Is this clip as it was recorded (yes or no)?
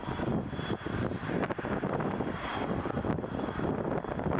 yes